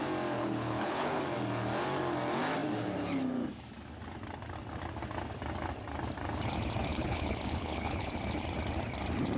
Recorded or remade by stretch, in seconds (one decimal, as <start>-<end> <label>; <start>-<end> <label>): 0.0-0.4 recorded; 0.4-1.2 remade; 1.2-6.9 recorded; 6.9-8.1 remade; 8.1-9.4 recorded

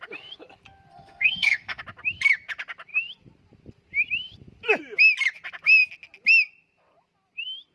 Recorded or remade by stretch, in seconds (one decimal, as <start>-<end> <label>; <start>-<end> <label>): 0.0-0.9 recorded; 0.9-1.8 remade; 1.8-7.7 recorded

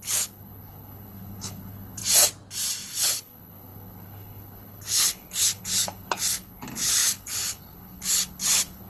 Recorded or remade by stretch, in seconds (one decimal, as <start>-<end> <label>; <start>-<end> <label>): 0.0-2.0 remade; 2.0-2.9 recorded; 2.9-8.9 remade